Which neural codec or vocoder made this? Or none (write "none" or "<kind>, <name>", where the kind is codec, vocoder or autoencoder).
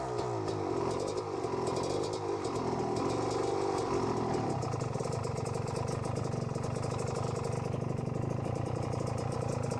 none